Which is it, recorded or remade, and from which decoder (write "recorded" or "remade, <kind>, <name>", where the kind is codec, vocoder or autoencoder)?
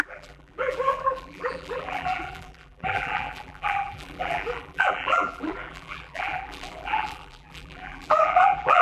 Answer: remade, vocoder, BigVGAN v2